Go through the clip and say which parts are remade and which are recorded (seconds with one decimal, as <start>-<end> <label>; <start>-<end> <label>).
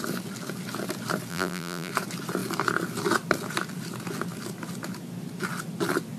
0.0-1.3 recorded; 1.3-1.9 remade; 1.9-6.2 recorded